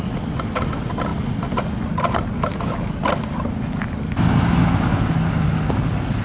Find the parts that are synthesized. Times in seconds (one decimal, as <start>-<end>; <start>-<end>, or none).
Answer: none